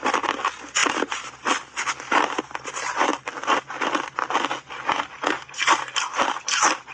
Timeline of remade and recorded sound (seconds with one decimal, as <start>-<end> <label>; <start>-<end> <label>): 0.0-6.9 recorded